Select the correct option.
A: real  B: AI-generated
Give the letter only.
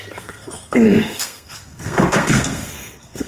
B